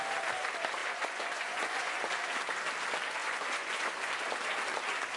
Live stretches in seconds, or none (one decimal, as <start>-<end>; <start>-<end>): 0.0-0.8; 2.0-3.2; 4.1-5.2